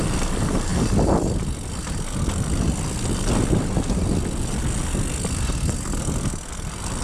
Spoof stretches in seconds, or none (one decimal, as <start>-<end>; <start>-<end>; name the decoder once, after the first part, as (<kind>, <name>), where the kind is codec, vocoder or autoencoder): none